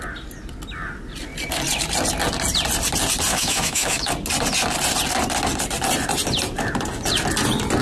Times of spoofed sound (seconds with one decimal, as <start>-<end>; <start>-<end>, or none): 3.3-4.1

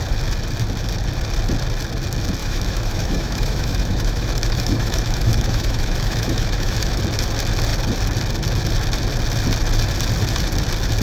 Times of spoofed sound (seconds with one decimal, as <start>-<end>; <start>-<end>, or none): 2.4-7.0

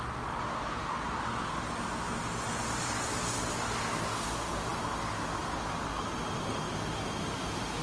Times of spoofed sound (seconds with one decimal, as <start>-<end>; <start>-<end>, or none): none

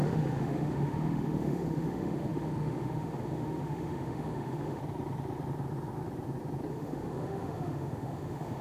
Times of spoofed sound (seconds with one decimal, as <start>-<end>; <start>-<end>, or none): 0.0-4.8; 6.7-8.6

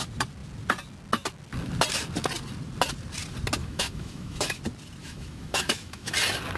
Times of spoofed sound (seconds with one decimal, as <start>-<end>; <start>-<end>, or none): 3.6-4.6; 5.0-6.1

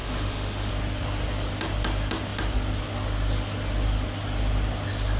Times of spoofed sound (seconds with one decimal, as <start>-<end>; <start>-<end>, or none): 0.0-0.7